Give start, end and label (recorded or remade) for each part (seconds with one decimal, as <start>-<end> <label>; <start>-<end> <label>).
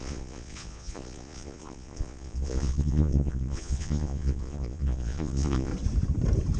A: 0.0-5.7 remade; 5.7-6.6 recorded